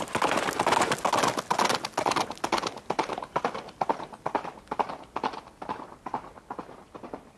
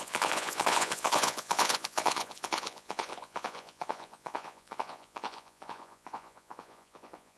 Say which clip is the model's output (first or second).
second